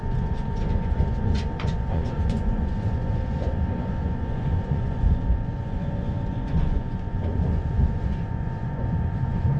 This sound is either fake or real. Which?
fake